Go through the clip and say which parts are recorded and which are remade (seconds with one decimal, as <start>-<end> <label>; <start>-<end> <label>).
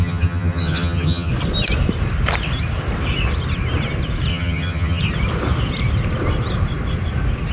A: 0.0-1.3 remade; 1.3-4.3 recorded; 4.3-5.0 remade; 5.0-7.5 recorded